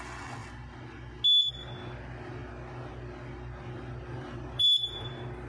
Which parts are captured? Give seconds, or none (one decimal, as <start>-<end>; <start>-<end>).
0.0-4.1; 5.1-5.5